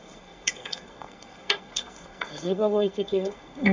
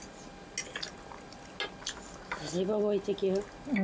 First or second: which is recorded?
second